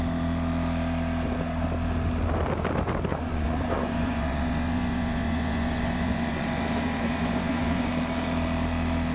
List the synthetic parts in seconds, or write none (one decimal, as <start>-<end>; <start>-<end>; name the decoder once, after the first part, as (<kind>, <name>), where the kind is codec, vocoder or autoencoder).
3.1-7.9 (vocoder, Vocos)